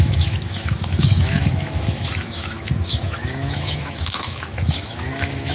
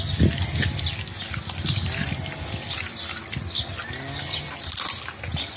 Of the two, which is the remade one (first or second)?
first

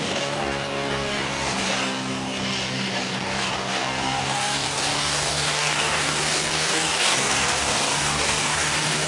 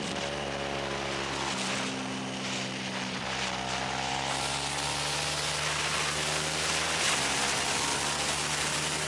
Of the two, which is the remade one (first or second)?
first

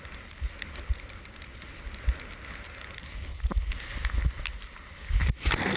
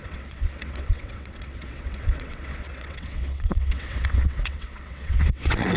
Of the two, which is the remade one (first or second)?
second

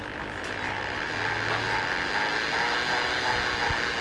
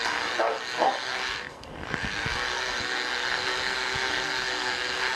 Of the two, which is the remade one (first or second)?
second